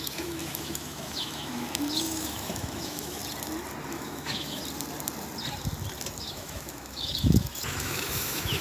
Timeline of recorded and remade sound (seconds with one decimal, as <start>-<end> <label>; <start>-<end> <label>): 0.0-3.2 remade; 3.2-3.9 recorded; 3.9-4.6 remade; 4.6-6.2 recorded; 6.2-8.6 remade